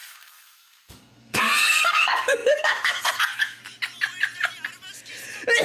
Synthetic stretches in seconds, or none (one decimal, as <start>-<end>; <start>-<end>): 0.0-3.6